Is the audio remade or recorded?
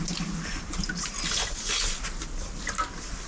recorded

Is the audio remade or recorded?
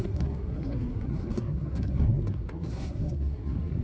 remade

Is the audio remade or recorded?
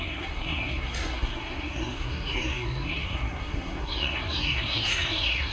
remade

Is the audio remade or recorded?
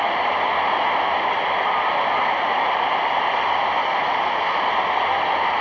recorded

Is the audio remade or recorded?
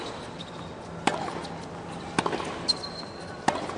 recorded